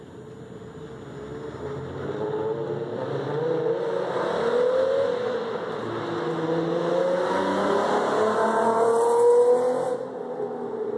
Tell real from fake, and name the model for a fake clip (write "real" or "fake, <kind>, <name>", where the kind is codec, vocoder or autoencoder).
real